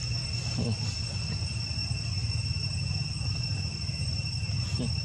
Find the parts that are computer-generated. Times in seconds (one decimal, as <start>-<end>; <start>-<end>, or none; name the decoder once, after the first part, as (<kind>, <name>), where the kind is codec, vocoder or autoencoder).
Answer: none